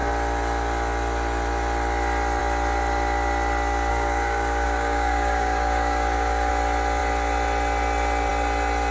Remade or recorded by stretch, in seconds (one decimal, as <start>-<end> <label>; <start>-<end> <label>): 0.0-3.9 recorded; 3.9-6.5 remade; 6.5-8.9 recorded